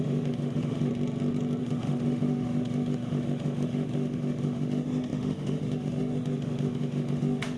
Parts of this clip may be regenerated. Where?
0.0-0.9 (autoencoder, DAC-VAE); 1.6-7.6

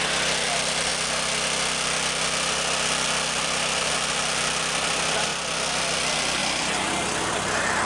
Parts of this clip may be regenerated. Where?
none

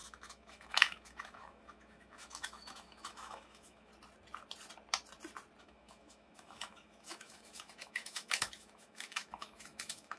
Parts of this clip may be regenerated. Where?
0.0-3.9 (autoencoder, DAC-VAE); 5.6-10.2

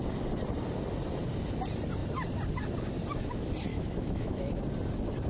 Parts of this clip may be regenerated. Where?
3.7-4.6 (autoencoder, DAC-VAE)

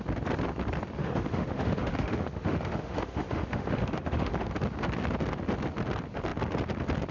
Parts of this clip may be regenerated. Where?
1.0-4.5 (autoencoder, DAC-VAE)

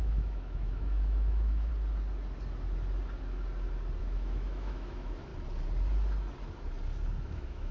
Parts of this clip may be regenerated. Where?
0.0-1.7 (autoencoder, DAC-VAE); 4.0-5.3; 7.2-7.7

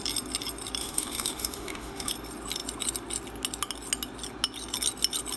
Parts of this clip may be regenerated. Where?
0.8-2.1 (autoencoder, DAC-VAE)

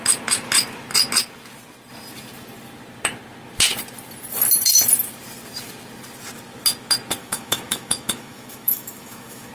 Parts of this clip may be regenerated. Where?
7.2-9.5 (autoencoder, DAC-VAE)